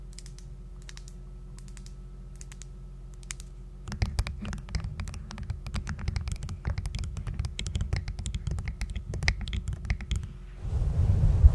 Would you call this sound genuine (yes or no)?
yes